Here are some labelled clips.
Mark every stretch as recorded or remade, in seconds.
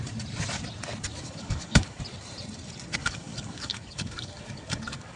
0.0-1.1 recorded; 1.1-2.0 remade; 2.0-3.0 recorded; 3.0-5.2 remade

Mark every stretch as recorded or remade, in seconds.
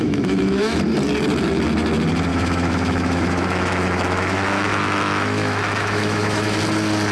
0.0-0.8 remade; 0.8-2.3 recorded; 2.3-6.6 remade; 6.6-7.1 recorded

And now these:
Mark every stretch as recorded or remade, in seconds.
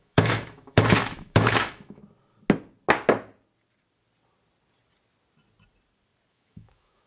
0.0-2.0 remade; 2.0-6.3 recorded; 6.3-7.1 remade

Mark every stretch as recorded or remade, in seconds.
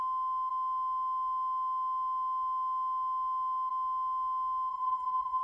0.0-4.7 recorded; 4.7-5.4 remade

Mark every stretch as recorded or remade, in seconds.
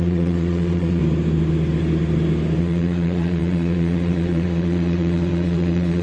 0.0-1.0 remade; 1.0-2.6 recorded; 2.6-6.0 remade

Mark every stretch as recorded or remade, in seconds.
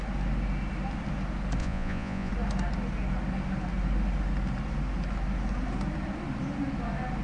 0.0-1.6 recorded; 1.6-2.3 remade; 2.3-7.2 recorded